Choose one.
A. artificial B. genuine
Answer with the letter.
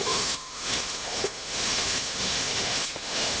A